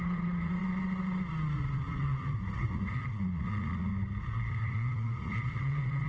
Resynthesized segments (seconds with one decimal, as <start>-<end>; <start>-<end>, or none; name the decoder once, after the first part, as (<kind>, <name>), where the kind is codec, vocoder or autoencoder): 0.0-0.6 (vocoder, Vocos); 1.5-3.9; 4.5-6.1